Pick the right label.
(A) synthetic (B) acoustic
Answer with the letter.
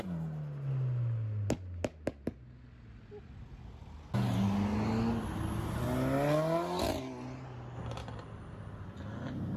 B